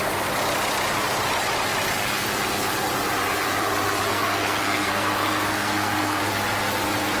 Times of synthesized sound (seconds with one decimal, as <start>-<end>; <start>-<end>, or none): 4.1-6.2